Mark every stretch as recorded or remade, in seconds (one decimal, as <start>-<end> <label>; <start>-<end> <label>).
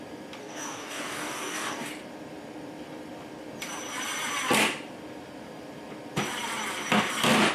0.0-0.4 recorded; 0.4-1.9 remade; 1.9-7.5 recorded